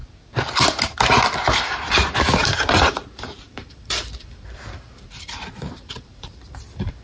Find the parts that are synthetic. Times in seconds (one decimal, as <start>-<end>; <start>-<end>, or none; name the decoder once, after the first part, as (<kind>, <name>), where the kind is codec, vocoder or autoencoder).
1.6-2.0 (vocoder, BigVGAN v2); 2.7-7.0